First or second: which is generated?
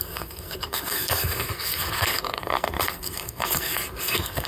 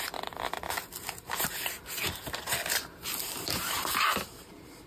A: first